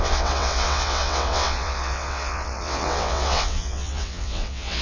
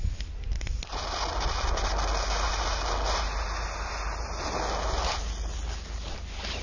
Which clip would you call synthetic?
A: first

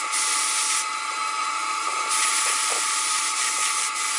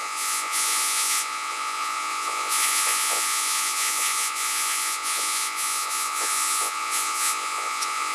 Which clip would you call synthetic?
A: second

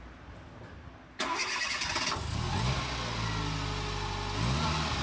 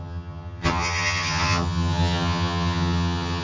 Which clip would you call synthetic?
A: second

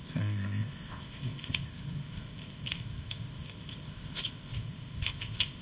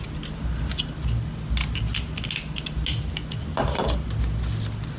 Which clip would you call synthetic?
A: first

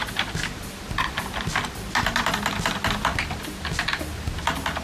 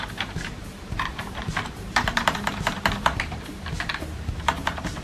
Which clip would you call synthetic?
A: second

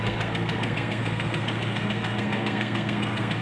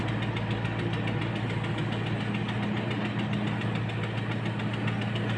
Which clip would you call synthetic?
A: first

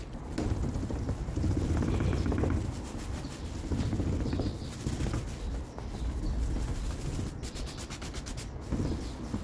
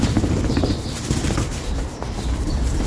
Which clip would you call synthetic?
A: second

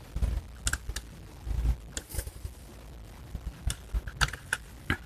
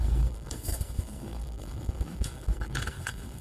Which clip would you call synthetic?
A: second